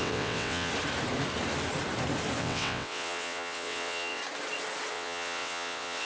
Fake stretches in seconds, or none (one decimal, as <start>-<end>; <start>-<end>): 0.0-0.7; 2.4-4.2; 4.9-6.1